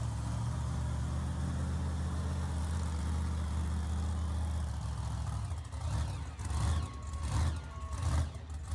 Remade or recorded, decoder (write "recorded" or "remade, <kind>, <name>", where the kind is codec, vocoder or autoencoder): recorded